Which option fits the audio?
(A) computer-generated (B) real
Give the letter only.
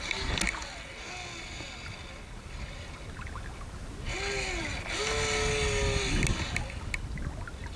B